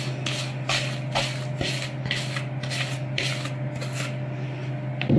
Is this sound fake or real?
real